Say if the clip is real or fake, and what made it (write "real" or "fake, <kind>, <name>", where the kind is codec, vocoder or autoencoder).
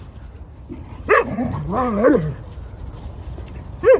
real